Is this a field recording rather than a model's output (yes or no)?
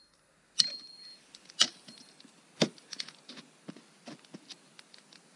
yes